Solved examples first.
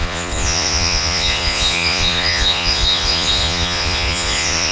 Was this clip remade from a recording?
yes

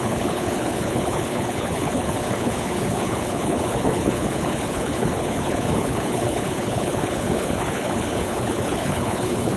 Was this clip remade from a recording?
yes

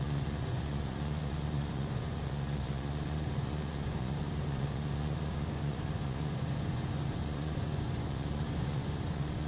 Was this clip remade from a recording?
yes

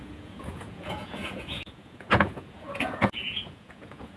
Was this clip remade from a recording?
yes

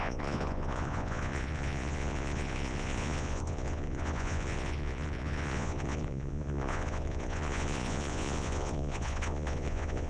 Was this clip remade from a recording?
yes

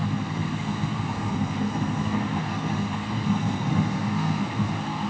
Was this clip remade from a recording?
yes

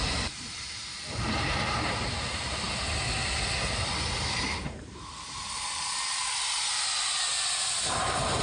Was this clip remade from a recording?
no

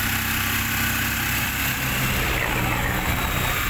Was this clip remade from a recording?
no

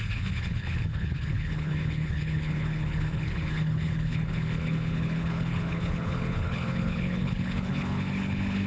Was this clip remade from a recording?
yes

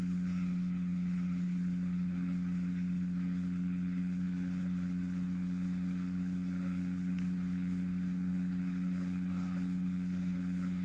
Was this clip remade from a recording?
yes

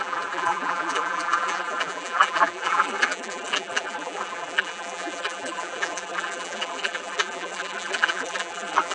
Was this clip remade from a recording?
yes